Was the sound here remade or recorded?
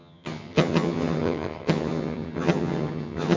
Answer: remade